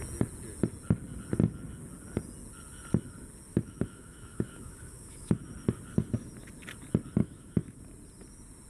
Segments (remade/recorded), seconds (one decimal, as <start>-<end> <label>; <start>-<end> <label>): 0.0-3.5 recorded; 3.5-5.4 remade; 5.4-7.2 recorded; 7.2-7.8 remade; 7.8-8.7 recorded